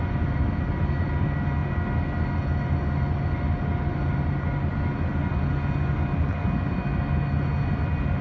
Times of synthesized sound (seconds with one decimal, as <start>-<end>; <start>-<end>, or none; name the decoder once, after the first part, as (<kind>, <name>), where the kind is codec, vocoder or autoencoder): none